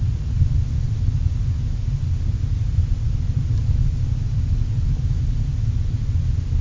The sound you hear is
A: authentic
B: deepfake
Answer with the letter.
A